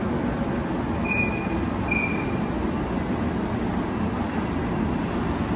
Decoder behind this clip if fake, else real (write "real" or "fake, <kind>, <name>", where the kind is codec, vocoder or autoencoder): real